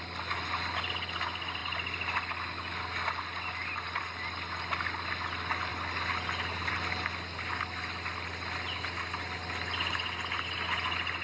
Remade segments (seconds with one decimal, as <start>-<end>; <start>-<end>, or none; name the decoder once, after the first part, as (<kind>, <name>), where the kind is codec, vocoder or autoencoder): none